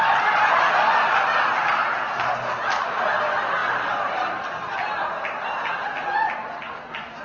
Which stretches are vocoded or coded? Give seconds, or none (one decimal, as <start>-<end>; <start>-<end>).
none